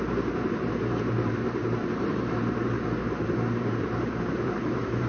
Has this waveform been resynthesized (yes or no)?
yes